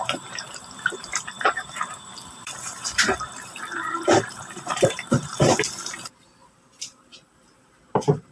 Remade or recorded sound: remade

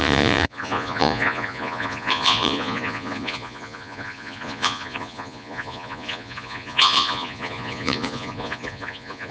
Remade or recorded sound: remade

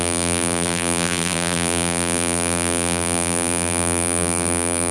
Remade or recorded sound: remade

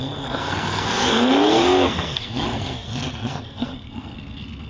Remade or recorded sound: remade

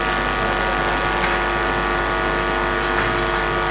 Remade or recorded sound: recorded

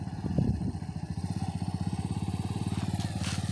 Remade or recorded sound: recorded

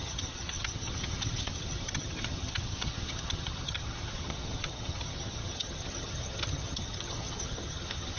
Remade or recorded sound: remade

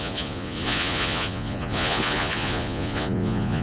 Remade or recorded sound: remade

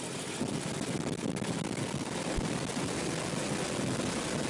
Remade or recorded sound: recorded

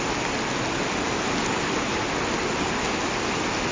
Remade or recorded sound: recorded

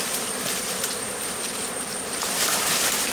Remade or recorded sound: remade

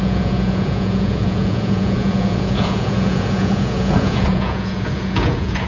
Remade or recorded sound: remade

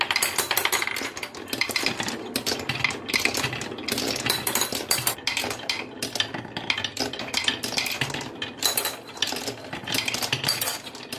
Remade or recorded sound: recorded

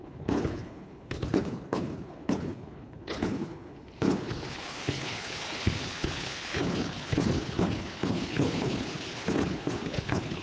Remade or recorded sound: remade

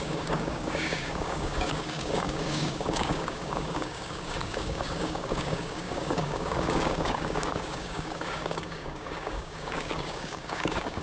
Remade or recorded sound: remade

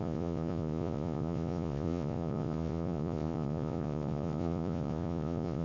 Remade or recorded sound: remade